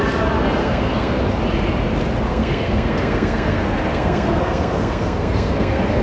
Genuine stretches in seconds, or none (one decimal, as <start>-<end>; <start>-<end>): 0.0-0.6; 1.2-2.3